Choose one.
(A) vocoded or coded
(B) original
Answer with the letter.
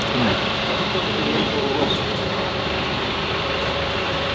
A